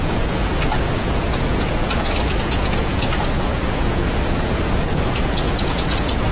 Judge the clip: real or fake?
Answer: fake